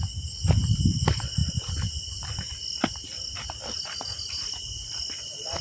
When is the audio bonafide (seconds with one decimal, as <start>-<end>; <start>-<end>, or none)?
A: 0.0-5.6